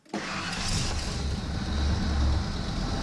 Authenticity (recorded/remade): recorded